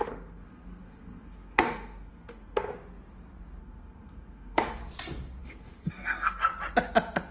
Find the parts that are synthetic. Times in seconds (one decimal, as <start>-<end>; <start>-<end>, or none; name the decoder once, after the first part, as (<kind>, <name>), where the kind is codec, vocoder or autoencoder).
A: 0.0-2.7 (codec, SNAC); 3.6-4.8; 5.4-6.5